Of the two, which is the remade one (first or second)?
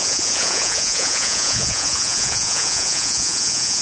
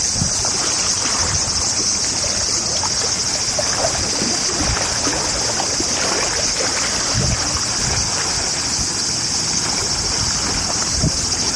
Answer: first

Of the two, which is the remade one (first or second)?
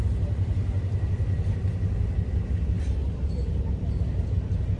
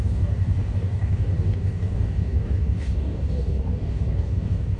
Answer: second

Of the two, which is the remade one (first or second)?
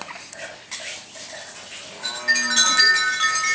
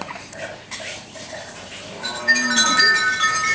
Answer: second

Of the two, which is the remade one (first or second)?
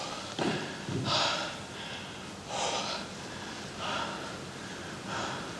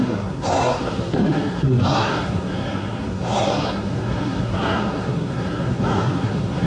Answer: second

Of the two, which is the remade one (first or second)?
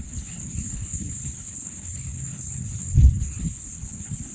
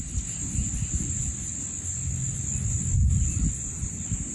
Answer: first